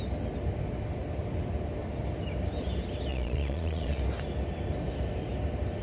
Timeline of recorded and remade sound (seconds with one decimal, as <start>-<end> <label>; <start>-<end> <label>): 0.0-3.1 recorded; 3.1-4.0 remade; 4.0-5.8 recorded